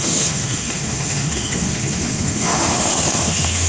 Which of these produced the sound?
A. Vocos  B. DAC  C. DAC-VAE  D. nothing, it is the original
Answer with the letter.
C